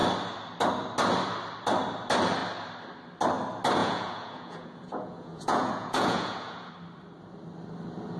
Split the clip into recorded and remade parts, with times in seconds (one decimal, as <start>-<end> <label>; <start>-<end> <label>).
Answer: 0.0-3.8 recorded; 3.8-6.7 remade; 6.7-8.2 recorded